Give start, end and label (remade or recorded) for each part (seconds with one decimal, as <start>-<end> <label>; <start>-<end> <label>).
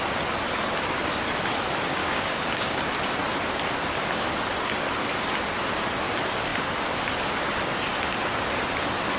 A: 0.0-2.0 recorded; 2.0-2.8 remade; 2.8-9.2 recorded